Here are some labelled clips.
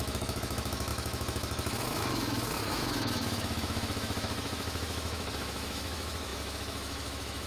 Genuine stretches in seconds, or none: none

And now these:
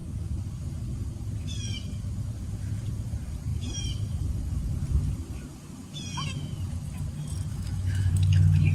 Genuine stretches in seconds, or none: 0.0-7.5; 8.1-8.7

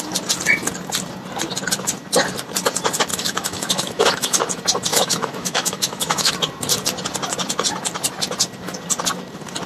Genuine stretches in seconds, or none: 0.0-3.1; 4.4-4.9; 6.3-9.7